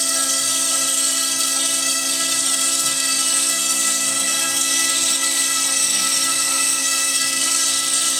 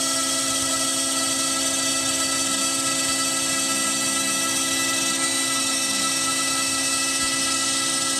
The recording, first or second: second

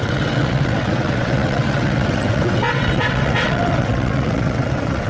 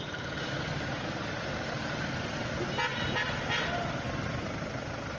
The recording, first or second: second